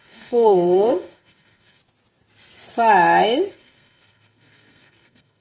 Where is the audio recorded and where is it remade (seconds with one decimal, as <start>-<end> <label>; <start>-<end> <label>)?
0.0-1.8 remade; 1.8-3.5 recorded; 3.5-5.4 remade